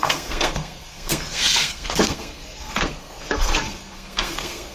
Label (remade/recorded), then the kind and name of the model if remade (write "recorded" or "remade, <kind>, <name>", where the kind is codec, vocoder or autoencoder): remade, codec, SNAC